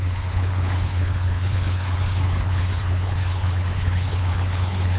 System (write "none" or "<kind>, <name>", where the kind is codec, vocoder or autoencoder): codec, HILCodec